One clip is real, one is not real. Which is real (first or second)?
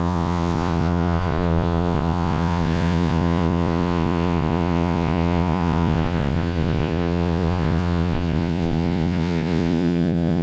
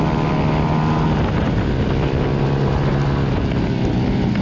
second